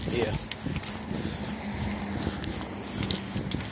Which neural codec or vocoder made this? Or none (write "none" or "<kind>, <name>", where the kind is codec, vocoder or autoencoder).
none